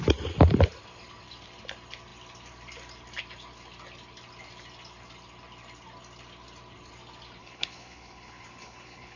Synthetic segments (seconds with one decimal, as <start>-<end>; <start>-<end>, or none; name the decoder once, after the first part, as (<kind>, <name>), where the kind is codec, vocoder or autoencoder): 7.4-9.2 (codec, HILCodec)